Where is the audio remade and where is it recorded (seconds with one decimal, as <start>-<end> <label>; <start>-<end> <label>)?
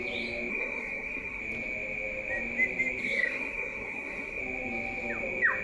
0.0-0.5 recorded; 0.5-1.4 remade; 1.4-3.0 recorded; 3.0-4.4 remade; 4.4-5.6 recorded